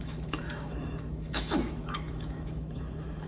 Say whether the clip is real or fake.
fake